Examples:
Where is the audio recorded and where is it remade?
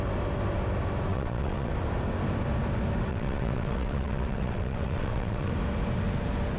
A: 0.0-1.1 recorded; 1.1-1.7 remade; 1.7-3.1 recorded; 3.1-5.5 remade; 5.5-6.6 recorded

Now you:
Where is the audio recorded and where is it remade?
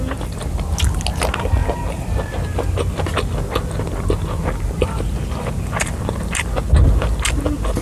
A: 0.0-7.8 recorded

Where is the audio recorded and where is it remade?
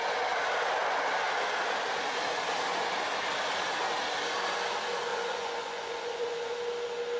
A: 0.0-5.1 recorded; 5.1-6.5 remade; 6.5-7.2 recorded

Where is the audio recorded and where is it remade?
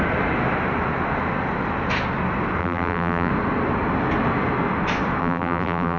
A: 0.0-2.6 recorded; 2.6-3.3 remade; 3.3-5.2 recorded; 5.2-6.0 remade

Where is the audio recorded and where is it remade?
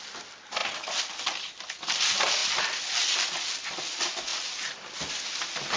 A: 0.0-5.8 recorded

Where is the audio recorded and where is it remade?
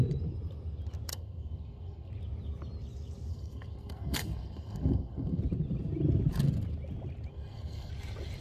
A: 0.0-1.1 recorded; 1.1-2.1 remade; 2.1-3.3 recorded; 3.3-5.4 remade; 5.4-7.3 recorded; 7.3-7.9 remade; 7.9-8.4 recorded